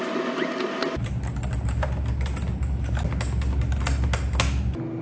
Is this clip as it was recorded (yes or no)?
yes